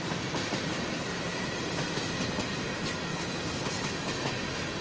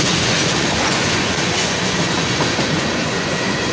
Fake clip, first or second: second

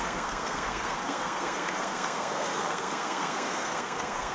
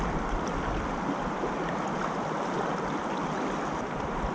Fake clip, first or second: first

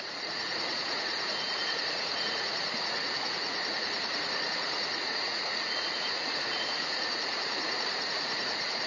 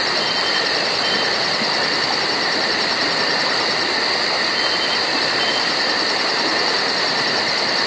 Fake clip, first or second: first